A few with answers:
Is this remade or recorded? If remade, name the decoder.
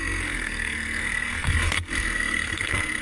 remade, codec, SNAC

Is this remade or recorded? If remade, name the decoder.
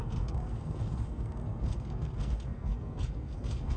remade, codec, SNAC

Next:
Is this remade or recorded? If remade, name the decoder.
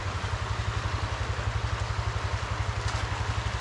recorded